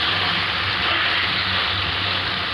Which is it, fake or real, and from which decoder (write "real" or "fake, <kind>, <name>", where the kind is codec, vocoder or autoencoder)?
real